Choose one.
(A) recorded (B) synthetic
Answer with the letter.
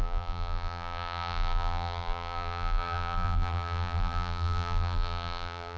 B